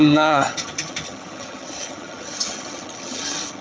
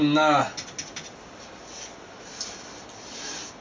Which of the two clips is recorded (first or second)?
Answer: second